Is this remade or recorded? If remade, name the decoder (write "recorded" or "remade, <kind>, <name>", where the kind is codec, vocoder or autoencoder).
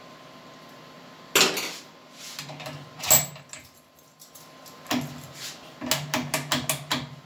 recorded